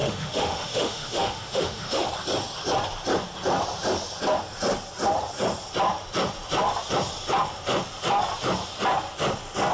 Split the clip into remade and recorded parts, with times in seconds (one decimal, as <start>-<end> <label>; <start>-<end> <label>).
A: 0.0-2.1 remade; 2.1-9.7 recorded